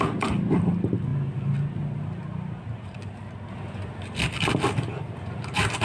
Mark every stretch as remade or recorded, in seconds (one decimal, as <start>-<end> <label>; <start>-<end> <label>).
0.0-5.8 recorded